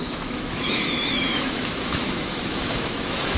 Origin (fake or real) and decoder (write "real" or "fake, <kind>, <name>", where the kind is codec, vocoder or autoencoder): fake, autoencoder, DAC-VAE